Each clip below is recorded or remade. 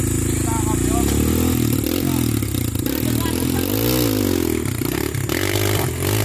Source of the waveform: recorded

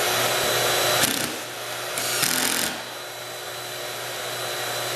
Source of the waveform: recorded